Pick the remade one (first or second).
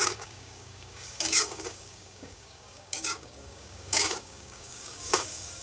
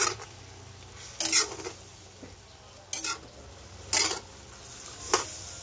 first